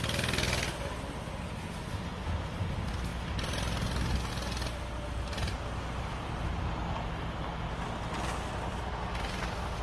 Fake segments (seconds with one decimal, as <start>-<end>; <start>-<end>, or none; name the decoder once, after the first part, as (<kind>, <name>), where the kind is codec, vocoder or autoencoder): none